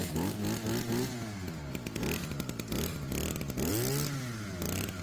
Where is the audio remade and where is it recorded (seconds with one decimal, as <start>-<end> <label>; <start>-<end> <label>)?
0.0-5.0 recorded